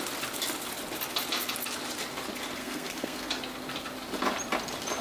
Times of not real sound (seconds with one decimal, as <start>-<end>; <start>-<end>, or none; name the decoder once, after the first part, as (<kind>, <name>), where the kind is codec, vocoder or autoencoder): 2.6-3.3 (codec, SNAC)